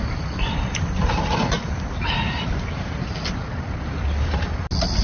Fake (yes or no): no